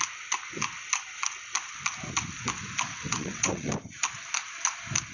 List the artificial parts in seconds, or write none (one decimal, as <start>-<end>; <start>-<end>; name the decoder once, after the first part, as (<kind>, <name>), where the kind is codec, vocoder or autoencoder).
2.9-3.7 (vocoder, WaveNeXt)